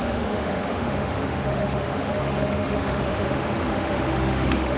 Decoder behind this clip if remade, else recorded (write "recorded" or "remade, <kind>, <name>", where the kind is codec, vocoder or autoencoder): remade, autoencoder, DAC-VAE